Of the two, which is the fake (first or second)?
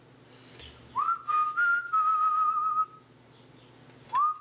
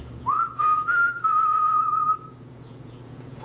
second